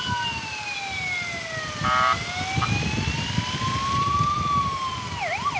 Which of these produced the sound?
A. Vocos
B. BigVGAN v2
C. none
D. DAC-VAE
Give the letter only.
C